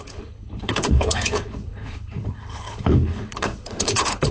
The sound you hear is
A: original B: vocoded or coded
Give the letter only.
B